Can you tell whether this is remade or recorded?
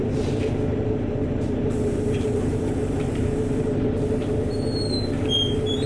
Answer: remade